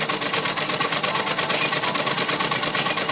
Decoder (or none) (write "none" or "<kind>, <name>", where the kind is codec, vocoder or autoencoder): none